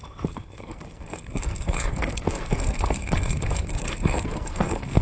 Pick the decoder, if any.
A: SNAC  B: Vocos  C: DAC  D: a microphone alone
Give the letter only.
A